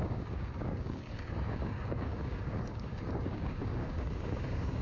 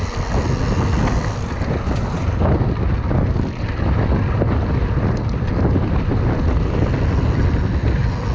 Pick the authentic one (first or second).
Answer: second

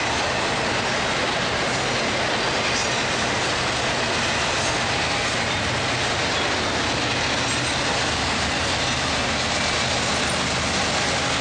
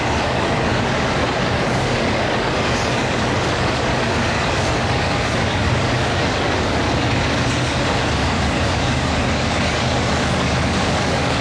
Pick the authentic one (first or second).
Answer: first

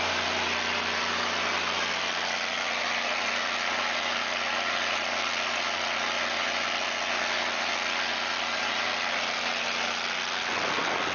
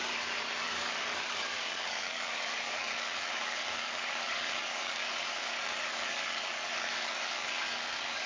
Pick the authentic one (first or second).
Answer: first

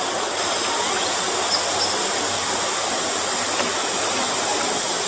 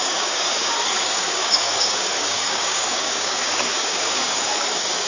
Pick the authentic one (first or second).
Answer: first